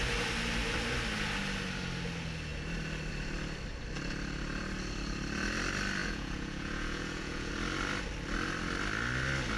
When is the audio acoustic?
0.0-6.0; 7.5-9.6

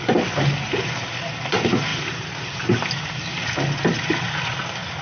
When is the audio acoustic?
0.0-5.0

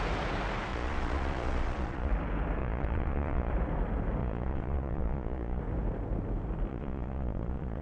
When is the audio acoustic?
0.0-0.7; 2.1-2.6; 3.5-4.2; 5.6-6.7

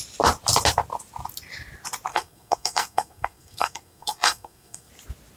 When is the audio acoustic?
0.0-2.1; 4.9-5.4